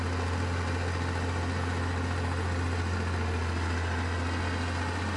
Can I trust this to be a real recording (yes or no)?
yes